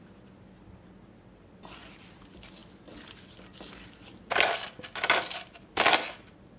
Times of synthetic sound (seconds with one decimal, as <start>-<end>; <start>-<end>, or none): none